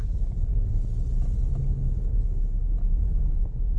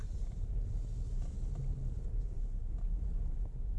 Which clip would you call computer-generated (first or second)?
second